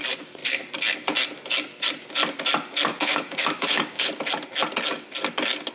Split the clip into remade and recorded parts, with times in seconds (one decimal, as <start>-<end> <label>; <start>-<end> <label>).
0.0-2.9 recorded; 2.9-4.1 remade; 4.1-5.7 recorded